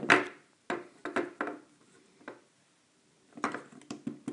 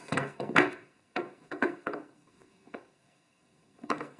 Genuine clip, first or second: first